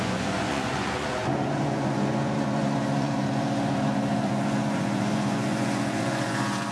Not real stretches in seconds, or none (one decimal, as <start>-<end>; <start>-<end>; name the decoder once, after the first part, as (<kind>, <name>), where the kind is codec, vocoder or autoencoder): 0.0-6.7 (vocoder, Vocos)